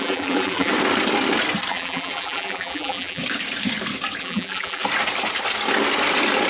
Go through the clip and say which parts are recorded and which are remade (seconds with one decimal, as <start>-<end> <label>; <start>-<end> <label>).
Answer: 0.0-0.7 remade; 0.7-1.7 recorded; 1.7-3.2 remade; 3.2-4.2 recorded; 4.2-4.8 remade; 4.8-6.5 recorded